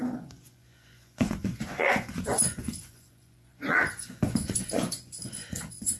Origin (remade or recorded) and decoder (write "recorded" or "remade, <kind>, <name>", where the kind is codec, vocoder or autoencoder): remade, vocoder, Vocos